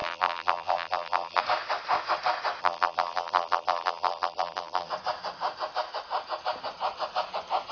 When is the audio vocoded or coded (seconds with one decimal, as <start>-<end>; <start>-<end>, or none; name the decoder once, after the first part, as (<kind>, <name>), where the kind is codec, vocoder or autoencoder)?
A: 0.0-1.4 (vocoder, BigVGAN v2); 2.6-4.9